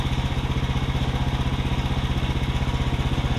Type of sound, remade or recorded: recorded